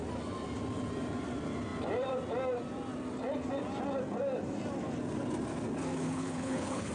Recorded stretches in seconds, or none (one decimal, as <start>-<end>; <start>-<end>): 0.0-5.9